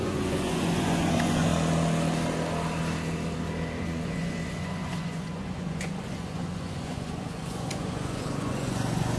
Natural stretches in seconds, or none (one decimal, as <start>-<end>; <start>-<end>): 1.5-3.8